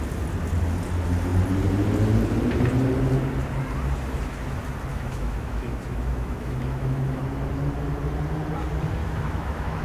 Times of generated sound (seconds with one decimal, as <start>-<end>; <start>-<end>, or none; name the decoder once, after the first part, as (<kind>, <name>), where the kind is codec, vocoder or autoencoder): 4.9-7.2 (autoencoder, DAC-VAE); 9.0-9.8